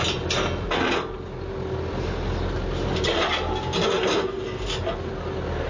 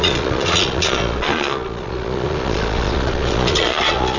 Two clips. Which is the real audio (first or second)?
first